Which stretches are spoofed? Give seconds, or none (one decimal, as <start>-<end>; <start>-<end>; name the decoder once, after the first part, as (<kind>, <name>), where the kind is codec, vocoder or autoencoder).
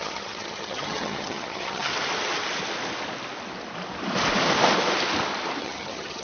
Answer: 0.0-1.9 (vocoder, HiFi-GAN); 5.6-6.2